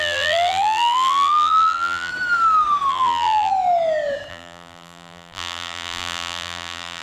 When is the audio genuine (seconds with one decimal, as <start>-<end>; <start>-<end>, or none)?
2.1-2.9; 3.5-4.3